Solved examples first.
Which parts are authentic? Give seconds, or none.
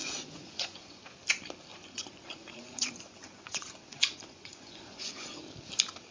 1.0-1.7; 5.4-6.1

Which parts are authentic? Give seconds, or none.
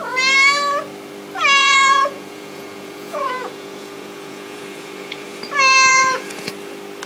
0.0-1.6; 5.4-5.9; 6.5-7.1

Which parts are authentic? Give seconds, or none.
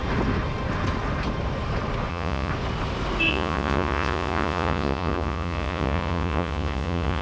0.0-2.1; 2.5-3.3